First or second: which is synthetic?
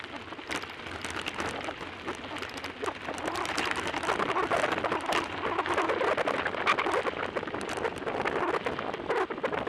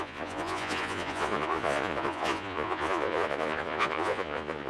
second